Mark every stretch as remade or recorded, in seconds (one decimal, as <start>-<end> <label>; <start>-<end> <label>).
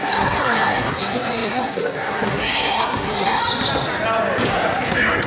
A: 0.0-3.4 remade; 3.4-4.5 recorded; 4.5-5.3 remade